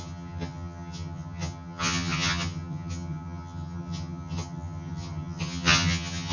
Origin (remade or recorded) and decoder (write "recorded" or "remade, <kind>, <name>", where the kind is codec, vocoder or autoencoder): remade, vocoder, HiFi-GAN